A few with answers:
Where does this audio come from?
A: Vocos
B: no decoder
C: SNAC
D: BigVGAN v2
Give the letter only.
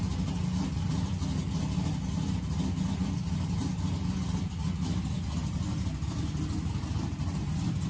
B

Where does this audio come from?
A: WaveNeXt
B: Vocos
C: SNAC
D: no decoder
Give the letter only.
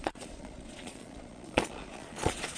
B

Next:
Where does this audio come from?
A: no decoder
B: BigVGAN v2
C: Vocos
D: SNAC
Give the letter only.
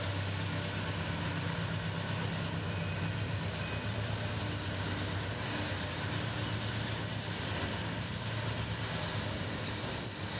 A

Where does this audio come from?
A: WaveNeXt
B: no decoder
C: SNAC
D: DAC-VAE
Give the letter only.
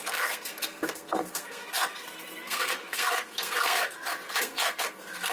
C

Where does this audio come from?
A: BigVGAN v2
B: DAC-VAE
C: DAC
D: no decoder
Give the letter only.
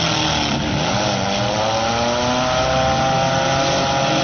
D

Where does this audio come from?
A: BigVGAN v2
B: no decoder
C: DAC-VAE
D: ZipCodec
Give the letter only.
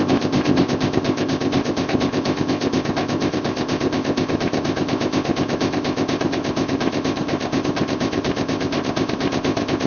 D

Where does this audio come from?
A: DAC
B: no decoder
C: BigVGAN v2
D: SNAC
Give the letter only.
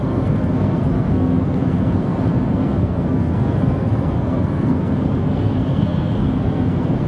D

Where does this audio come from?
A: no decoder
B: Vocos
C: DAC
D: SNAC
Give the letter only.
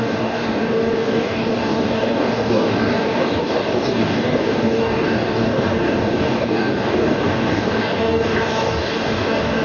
C